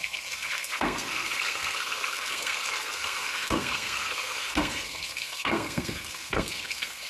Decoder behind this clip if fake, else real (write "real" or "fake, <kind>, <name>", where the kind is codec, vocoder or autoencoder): fake, codec, SNAC